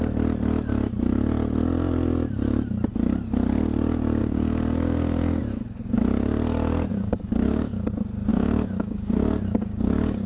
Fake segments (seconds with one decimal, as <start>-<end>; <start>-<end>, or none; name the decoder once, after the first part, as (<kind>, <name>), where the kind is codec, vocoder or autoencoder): 4.2-5.4 (codec, DAC); 6.9-7.9; 8.3-10.3